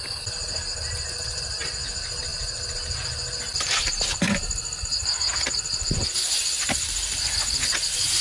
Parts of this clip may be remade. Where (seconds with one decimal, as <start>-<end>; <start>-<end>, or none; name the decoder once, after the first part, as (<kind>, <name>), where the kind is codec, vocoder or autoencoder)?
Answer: none